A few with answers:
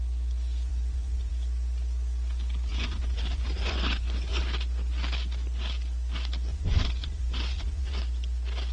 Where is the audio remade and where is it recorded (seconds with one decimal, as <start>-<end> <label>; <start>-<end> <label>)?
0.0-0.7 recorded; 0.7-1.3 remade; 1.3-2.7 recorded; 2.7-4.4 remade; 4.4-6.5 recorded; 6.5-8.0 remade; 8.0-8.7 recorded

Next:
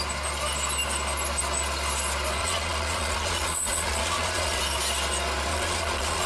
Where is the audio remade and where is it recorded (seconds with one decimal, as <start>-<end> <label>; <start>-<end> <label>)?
0.0-2.4 recorded; 2.4-4.6 remade; 4.6-5.5 recorded; 5.5-6.3 remade

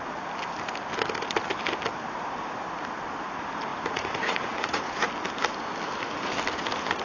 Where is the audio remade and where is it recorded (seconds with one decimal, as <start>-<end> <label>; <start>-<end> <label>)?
0.0-3.7 recorded; 3.7-5.1 remade; 5.1-7.0 recorded